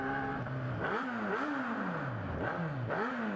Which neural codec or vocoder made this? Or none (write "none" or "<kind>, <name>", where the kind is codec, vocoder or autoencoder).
none